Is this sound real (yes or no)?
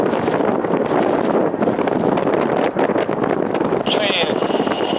yes